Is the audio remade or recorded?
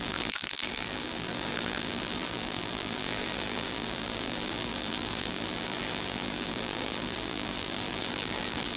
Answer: remade